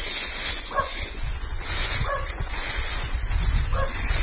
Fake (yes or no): yes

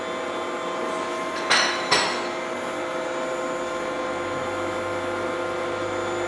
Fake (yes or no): no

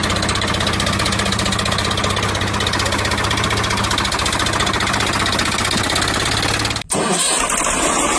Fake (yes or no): no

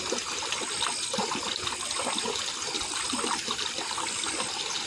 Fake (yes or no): no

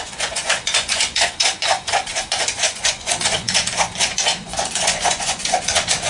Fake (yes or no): yes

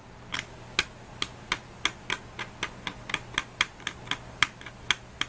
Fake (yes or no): no